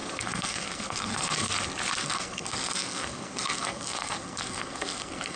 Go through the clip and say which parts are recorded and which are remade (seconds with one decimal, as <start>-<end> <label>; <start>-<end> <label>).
0.0-1.5 remade; 1.5-2.0 recorded; 2.0-5.4 remade